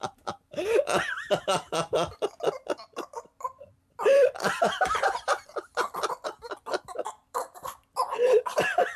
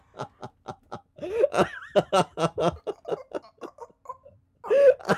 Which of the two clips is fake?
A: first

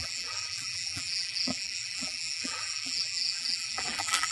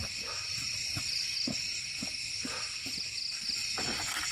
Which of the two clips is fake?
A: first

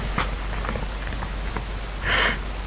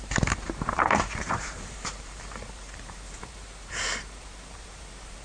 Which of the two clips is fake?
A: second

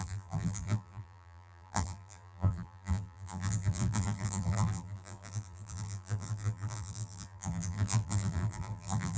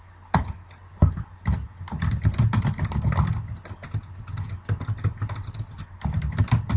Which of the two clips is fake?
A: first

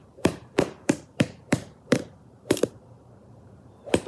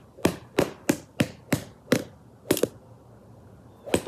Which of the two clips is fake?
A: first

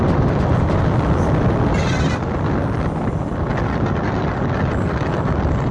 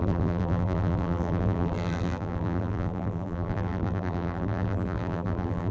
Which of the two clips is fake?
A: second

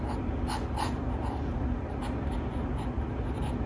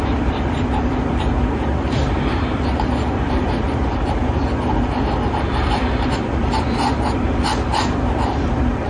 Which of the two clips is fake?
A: second